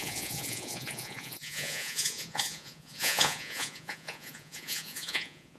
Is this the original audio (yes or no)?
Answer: no